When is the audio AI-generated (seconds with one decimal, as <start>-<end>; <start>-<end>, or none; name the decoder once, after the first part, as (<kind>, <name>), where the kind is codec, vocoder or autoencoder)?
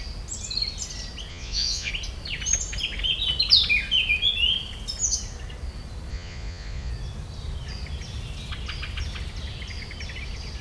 1.3-1.9 (vocoder, Vocos); 6.1-6.9